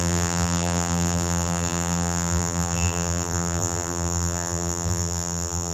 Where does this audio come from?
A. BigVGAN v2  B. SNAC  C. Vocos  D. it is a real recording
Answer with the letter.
A